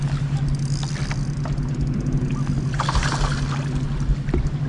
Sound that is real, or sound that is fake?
real